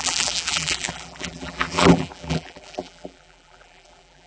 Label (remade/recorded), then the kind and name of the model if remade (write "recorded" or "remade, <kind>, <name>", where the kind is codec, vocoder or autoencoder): remade, vocoder, BigVGAN v2